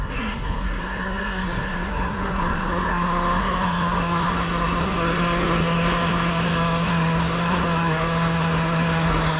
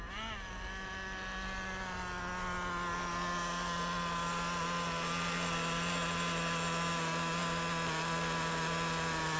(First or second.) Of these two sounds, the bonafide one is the second